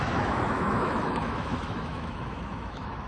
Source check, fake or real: fake